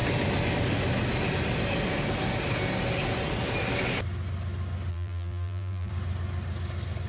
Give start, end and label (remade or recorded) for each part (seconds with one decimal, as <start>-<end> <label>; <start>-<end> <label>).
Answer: 0.0-4.9 recorded; 4.9-5.9 remade; 5.9-7.1 recorded